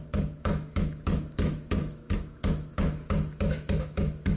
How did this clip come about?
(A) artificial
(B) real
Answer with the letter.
A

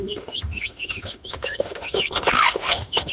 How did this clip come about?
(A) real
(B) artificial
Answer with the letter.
B